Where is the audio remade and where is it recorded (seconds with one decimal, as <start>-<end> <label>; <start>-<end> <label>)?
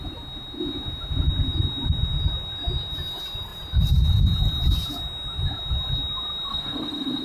0.0-6.5 recorded; 6.5-7.2 remade